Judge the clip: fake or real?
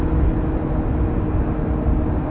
real